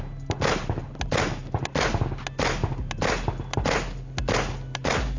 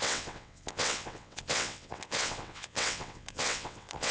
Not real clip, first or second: second